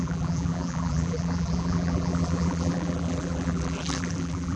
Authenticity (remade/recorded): remade